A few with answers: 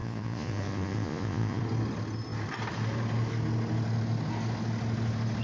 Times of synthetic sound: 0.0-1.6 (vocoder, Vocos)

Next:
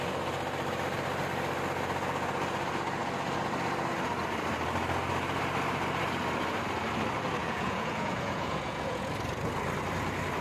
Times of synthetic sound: 7.4-9.1 (vocoder, Vocos)

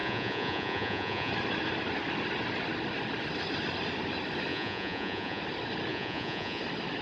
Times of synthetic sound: 0.0-1.3 (vocoder, Vocos); 4.5-5.4; 5.9-6.6

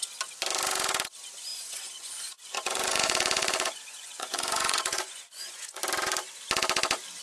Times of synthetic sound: 1.5-5.8 (vocoder, Vocos)

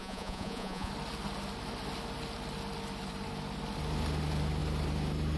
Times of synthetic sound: 0.0-0.9 (vocoder, Vocos)